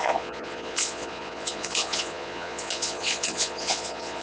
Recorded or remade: remade